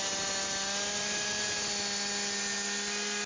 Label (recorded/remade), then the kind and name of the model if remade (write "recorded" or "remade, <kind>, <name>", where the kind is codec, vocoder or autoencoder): recorded